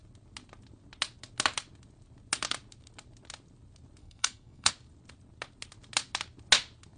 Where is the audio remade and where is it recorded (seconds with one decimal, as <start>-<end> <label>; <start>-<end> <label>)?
0.0-4.0 recorded; 4.0-4.7 remade; 4.7-7.0 recorded